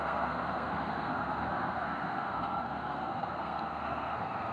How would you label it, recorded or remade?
remade